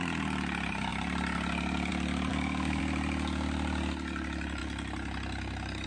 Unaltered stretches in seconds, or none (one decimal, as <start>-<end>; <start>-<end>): 0.0-2.3; 2.8-5.9